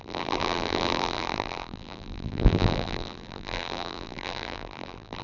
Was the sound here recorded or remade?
remade